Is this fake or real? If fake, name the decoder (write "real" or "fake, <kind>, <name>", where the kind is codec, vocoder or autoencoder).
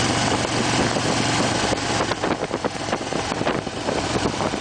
real